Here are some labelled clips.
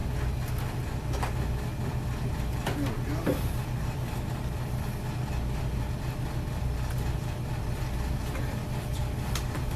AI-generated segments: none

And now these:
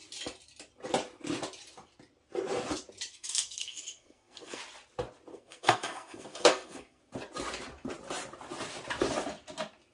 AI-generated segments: 3.1-4.6 (codec, SNAC); 5.3-7.0

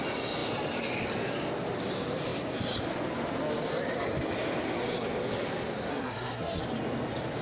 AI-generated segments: 5.9-6.6 (codec, SNAC)

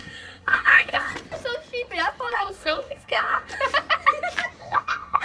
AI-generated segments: 0.0-1.1 (codec, SNAC); 2.3-3.5; 4.6-5.2

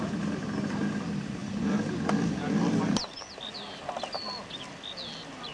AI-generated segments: none

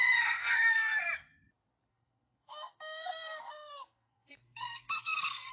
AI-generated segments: 0.4-1.0 (codec, SNAC); 1.9-5.5